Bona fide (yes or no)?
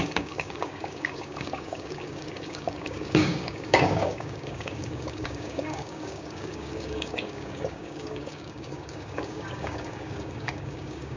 no